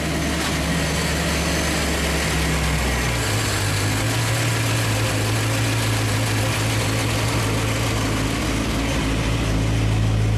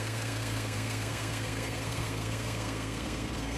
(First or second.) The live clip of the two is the first